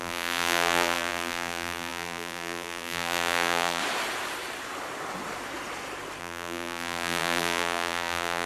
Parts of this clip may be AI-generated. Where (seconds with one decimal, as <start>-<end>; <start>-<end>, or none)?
0.0-3.8; 6.2-8.5